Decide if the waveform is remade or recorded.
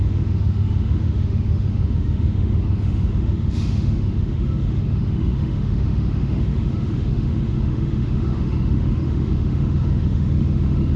remade